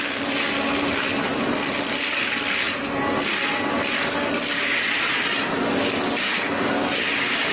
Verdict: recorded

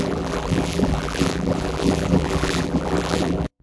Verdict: remade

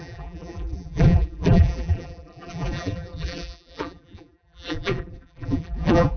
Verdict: remade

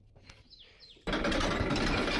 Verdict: remade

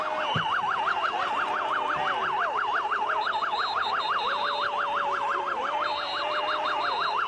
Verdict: remade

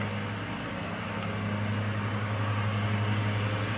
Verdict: recorded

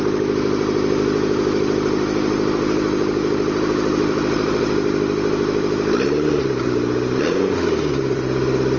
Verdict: remade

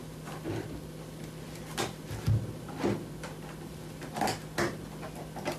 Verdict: recorded